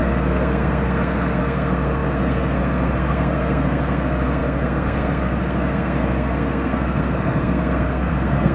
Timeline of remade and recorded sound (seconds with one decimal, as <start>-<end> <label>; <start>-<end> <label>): 0.0-8.5 remade